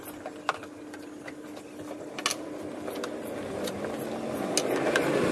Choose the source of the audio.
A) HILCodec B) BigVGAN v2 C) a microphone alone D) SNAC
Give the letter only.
C